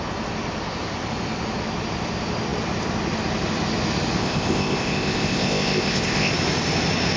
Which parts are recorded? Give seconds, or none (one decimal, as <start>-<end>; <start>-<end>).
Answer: 0.0-4.2; 6.3-7.2